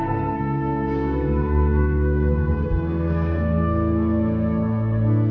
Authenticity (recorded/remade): remade